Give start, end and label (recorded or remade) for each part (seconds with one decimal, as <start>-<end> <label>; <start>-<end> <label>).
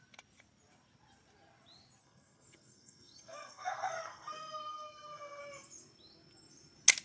0.0-2.0 recorded; 2.0-5.4 remade; 5.4-7.0 recorded